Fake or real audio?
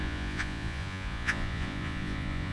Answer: fake